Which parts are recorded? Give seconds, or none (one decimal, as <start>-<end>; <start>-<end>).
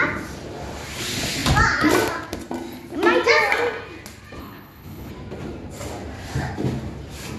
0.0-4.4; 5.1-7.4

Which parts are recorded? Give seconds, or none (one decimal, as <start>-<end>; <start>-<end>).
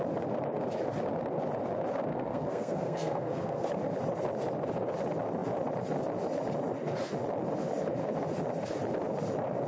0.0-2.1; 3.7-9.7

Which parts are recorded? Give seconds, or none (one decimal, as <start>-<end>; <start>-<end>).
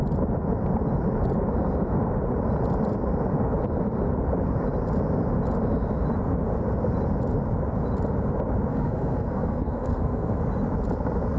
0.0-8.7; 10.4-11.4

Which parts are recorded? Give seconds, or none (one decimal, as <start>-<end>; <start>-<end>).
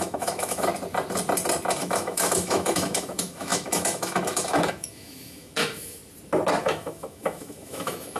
0.7-1.7; 6.0-6.6